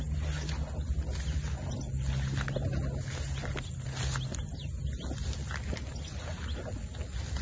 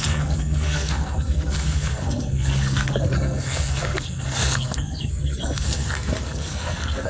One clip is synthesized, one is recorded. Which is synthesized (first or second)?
second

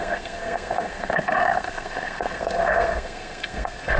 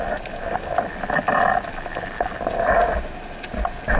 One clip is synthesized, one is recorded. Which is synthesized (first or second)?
first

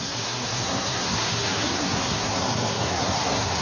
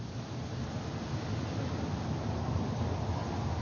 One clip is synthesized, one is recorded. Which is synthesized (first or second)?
first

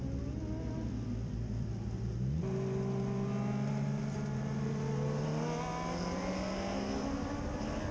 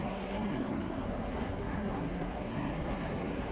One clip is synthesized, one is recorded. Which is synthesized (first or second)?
second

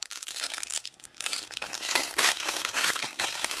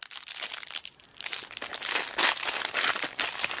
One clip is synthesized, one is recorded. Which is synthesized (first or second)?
first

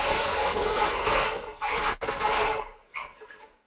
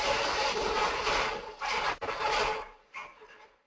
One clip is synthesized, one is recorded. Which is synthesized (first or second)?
first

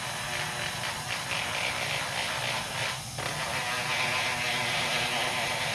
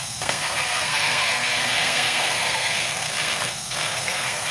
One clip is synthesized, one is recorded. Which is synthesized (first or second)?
second